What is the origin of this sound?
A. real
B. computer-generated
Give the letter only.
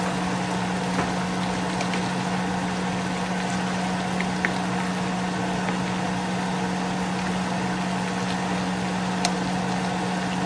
A